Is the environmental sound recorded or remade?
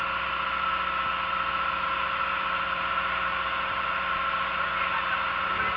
recorded